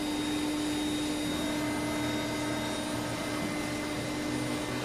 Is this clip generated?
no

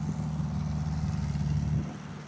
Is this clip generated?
no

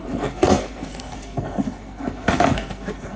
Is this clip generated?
yes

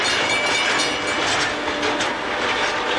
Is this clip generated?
no